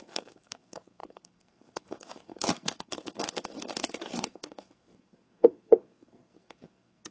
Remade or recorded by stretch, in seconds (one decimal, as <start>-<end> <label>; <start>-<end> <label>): 0.0-7.1 remade